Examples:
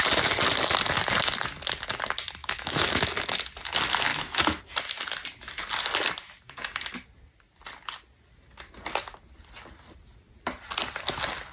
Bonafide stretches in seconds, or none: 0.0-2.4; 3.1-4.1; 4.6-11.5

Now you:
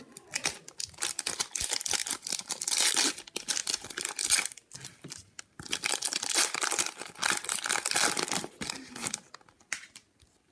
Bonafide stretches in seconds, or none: 0.0-10.5

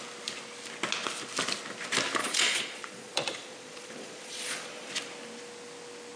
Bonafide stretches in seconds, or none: 0.0-2.2; 4.9-6.2

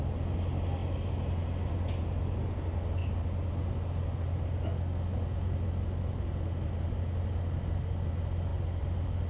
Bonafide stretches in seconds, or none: 0.0-9.3

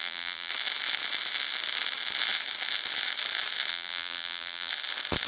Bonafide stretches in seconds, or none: 0.5-3.7; 4.7-5.3